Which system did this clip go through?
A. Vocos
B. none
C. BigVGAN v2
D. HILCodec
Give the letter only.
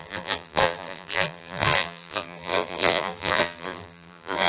C